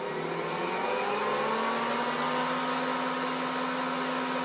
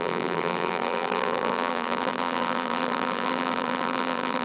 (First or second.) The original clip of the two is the first